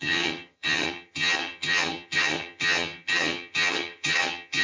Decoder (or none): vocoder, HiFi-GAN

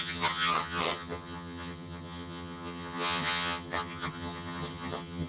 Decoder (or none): vocoder, HiFi-GAN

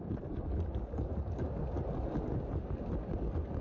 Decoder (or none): none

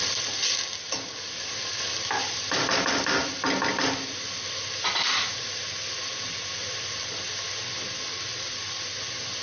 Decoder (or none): none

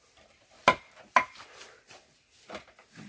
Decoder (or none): none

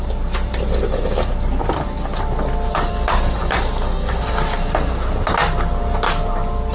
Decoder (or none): none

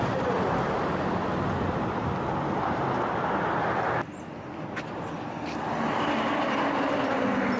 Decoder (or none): none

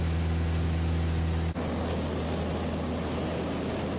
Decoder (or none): none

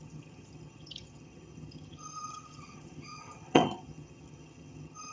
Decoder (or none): vocoder, HiFi-GAN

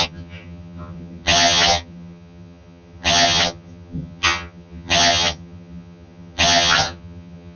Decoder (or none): vocoder, HiFi-GAN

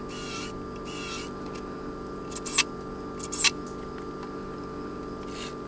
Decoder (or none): none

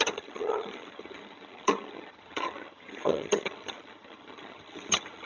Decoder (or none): vocoder, HiFi-GAN